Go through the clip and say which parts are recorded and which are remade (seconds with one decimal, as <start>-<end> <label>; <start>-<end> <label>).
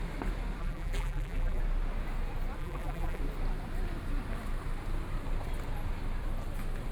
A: 0.0-0.6 recorded; 0.6-1.6 remade; 1.6-2.6 recorded; 2.6-3.2 remade; 3.2-6.9 recorded